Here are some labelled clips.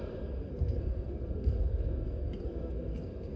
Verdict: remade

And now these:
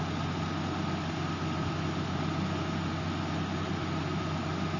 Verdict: recorded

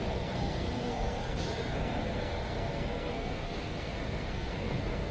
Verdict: remade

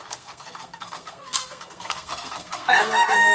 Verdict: remade